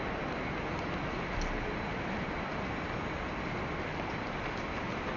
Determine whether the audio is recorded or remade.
recorded